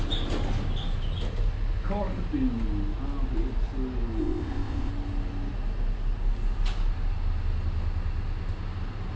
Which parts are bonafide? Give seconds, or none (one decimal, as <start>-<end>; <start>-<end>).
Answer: 0.0-4.2; 4.9-9.2